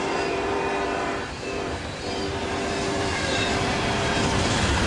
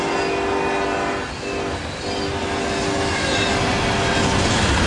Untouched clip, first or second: second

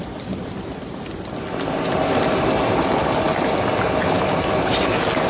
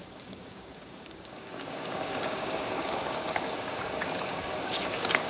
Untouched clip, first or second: first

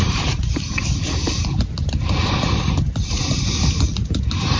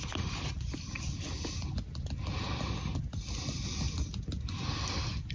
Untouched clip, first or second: second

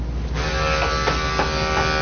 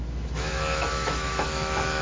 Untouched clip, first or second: first